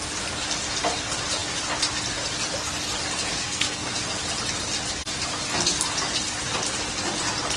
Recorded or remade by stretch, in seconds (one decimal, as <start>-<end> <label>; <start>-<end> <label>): 0.0-3.3 recorded; 3.3-4.2 remade; 4.2-7.6 recorded